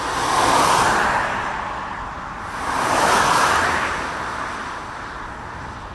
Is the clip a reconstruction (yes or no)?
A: no